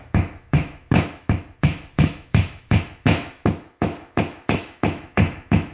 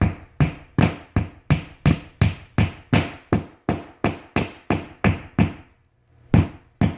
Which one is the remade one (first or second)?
first